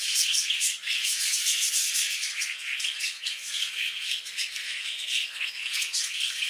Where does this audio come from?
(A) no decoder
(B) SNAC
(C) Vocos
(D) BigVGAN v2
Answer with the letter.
B